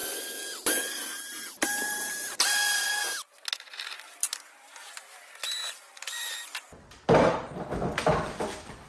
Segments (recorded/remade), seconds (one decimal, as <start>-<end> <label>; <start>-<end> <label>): 0.0-1.3 recorded; 1.3-2.4 remade; 2.4-8.9 recorded